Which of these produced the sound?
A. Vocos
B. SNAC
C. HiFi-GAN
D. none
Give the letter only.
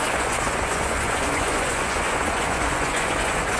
A